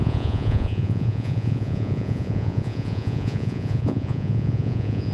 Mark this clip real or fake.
fake